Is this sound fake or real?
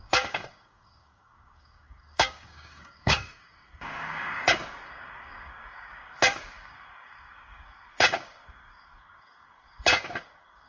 fake